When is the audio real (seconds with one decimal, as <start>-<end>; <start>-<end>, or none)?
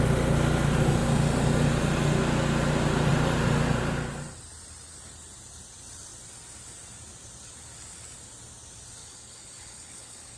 0.0-9.0